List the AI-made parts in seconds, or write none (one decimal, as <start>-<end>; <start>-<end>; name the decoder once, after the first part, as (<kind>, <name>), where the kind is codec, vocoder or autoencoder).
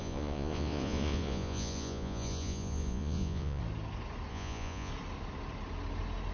0.0-3.6 (vocoder, Vocos); 4.3-4.9